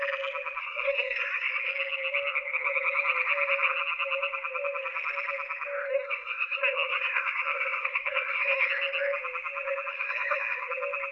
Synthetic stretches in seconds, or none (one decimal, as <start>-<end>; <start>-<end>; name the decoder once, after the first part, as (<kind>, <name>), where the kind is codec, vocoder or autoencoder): 0.6-1.7 (codec, SNAC); 5.9-8.7; 9.9-10.7